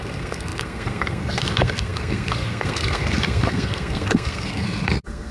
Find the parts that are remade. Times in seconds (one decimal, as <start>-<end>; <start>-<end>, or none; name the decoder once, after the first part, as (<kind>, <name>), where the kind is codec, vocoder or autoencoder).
0.0-5.3 (codec, SNAC)